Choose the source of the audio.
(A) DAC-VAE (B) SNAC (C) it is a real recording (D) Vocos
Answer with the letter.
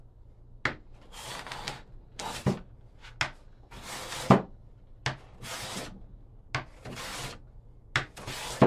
C